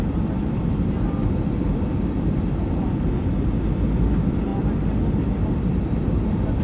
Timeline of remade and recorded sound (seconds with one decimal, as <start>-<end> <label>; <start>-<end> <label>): 0.0-6.6 recorded